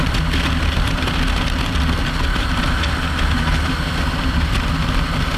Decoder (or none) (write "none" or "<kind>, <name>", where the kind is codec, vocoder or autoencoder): none